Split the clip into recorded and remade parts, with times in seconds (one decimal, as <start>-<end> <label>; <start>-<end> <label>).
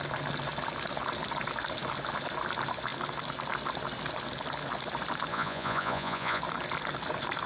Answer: 0.0-5.3 recorded; 5.3-6.4 remade; 6.4-7.5 recorded